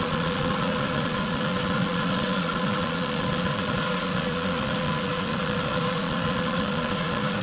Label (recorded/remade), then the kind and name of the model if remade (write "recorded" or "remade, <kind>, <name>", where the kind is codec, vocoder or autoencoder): remade, vocoder, Vocos